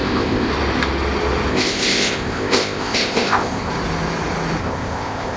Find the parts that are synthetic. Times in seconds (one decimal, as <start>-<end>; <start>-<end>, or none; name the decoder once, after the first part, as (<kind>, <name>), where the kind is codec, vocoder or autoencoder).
0.0-0.5 (codec, ZipCodec); 1.5-3.7; 4.6-5.4